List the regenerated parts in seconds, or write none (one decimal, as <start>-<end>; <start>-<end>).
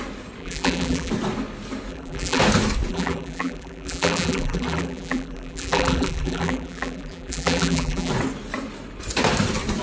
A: 0.4-1.1; 1.9-2.4; 2.9-8.1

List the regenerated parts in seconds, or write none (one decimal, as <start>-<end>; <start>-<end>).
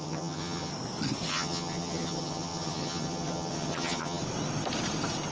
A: 0.0-0.7; 1.3-4.2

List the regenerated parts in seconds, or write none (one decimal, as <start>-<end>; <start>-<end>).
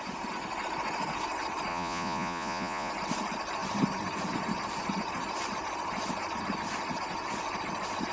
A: 1.7-2.9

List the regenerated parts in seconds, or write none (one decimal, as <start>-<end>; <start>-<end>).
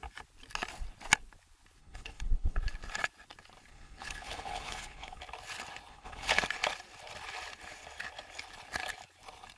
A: 1.8-2.6; 3.7-5.2; 5.9-6.4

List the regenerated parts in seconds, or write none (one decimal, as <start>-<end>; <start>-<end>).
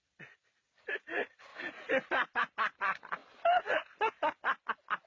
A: none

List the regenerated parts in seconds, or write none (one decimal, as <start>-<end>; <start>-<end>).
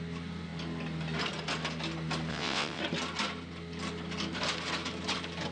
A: 2.3-2.8